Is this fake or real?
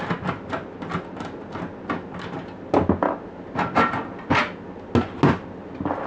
real